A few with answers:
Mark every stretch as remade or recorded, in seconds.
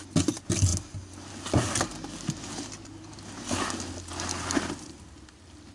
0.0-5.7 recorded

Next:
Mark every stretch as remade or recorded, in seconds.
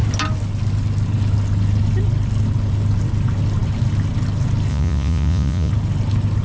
0.0-4.7 recorded; 4.7-5.7 remade; 5.7-6.4 recorded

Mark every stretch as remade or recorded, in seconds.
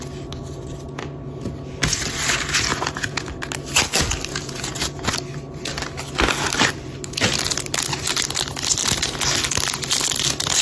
0.0-2.7 recorded; 2.7-3.3 remade; 3.3-4.3 recorded; 4.3-5.1 remade; 5.1-10.6 recorded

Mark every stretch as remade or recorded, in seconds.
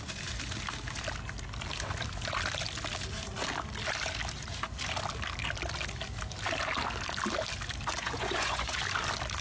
0.0-8.0 recorded; 8.0-8.8 remade; 8.8-9.4 recorded